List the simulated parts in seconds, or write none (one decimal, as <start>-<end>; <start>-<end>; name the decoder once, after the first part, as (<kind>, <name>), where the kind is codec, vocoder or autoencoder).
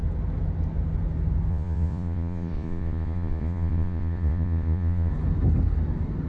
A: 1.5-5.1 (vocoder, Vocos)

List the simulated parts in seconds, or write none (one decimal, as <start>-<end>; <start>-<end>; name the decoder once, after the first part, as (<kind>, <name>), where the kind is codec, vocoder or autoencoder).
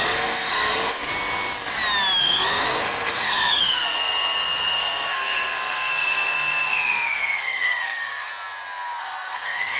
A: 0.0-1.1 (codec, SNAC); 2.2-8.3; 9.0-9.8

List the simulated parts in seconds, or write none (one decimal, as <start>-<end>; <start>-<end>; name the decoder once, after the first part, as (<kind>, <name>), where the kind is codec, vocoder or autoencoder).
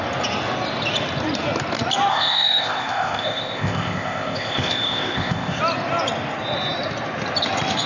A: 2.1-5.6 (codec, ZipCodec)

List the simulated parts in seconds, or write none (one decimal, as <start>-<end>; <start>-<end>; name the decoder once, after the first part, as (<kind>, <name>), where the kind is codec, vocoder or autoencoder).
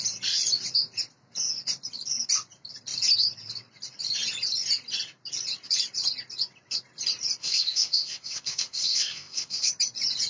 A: 7.4-9.7 (codec, ZipCodec)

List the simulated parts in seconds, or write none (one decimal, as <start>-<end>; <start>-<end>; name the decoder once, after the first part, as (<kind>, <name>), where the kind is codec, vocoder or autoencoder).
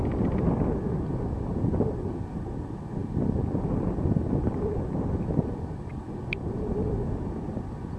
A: none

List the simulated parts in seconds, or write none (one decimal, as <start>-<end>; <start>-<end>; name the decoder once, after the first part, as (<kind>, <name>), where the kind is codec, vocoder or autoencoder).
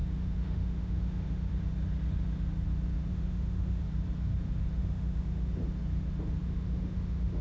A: 0.0-1.5 (autoencoder, DAC-VAE); 3.1-3.8; 4.8-5.5; 6.4-7.4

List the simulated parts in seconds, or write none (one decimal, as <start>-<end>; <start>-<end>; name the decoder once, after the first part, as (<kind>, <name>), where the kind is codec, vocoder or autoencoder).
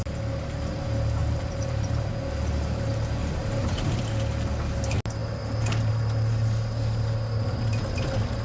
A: 1.2-2.1 (vocoder, BigVGAN v2); 3.2-4.0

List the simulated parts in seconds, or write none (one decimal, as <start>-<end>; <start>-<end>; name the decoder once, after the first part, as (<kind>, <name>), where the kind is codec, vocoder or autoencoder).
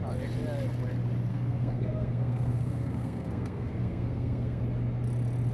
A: 1.3-4.6 (codec, SNAC)